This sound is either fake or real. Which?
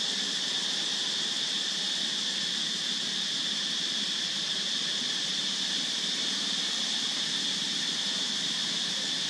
fake